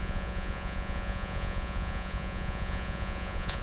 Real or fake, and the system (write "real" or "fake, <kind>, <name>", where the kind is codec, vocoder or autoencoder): fake, vocoder, Vocos